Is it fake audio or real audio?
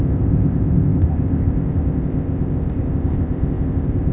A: fake